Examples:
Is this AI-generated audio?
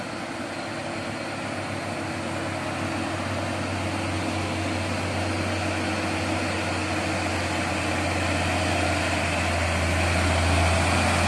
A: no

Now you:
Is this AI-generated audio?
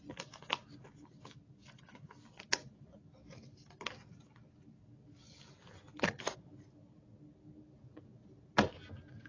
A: no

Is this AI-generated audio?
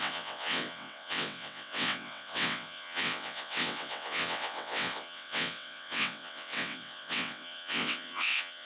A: yes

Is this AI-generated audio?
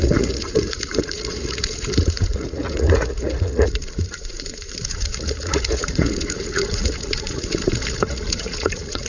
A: yes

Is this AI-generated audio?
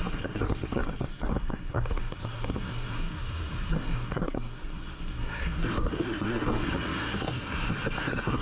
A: yes